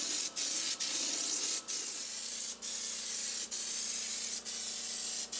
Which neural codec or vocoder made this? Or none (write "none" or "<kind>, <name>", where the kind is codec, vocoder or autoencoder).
none